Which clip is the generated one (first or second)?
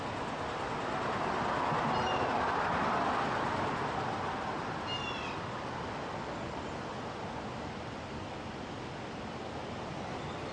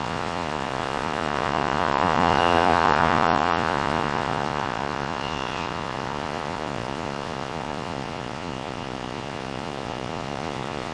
second